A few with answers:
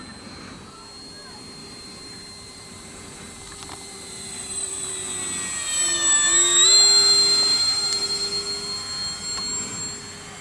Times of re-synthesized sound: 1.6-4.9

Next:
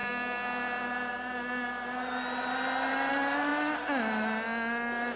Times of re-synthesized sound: 3.1-3.5

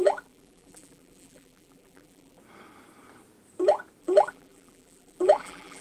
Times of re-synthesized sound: 0.0-2.4; 4.0-5.8

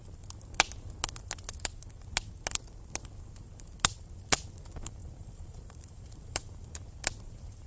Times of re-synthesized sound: 5.0-6.9